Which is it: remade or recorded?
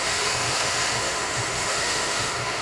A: remade